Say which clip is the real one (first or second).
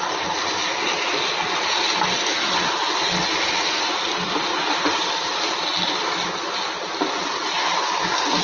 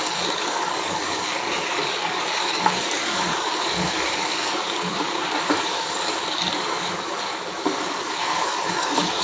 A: first